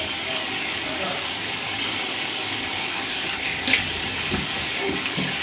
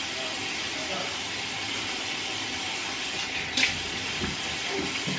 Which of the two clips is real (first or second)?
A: second